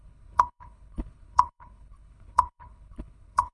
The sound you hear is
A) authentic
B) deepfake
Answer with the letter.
B